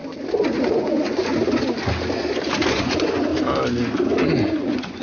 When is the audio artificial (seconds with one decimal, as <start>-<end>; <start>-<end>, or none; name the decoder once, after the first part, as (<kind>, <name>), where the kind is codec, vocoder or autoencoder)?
0.7-1.3 (vocoder, Vocos); 2.7-3.3; 4.4-5.0